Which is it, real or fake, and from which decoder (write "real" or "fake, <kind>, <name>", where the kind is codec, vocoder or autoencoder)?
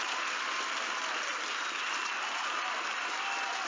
real